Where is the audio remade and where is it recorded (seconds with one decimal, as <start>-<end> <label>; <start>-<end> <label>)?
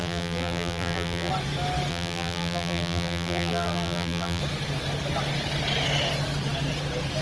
0.0-1.3 remade; 1.3-1.9 recorded; 1.9-4.4 remade; 4.4-7.2 recorded